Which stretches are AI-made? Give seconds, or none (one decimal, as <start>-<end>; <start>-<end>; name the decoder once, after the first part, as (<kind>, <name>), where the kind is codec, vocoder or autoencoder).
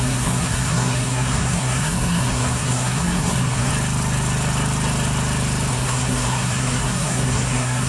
0.0-3.7 (codec, SNAC); 5.7-7.9